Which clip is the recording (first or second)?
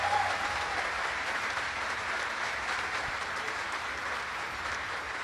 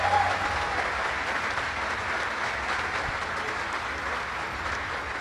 second